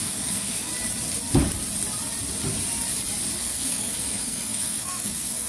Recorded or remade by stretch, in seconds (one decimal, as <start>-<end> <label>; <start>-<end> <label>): 0.0-0.7 remade; 0.7-3.4 recorded; 3.4-5.5 remade